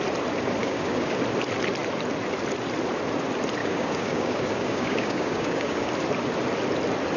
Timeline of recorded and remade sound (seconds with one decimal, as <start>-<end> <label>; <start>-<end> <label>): 0.0-0.6 recorded; 0.6-1.1 remade; 1.1-3.6 recorded; 3.6-5.9 remade; 5.9-7.2 recorded